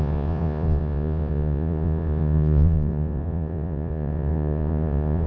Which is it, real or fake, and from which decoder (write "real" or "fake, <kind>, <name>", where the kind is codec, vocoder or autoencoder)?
fake, vocoder, Vocos